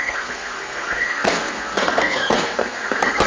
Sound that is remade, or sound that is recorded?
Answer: remade